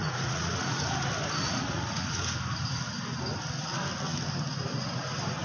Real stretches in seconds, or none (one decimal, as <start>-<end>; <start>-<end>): 0.8-1.4; 2.2-5.4